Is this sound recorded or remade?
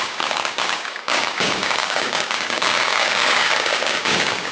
remade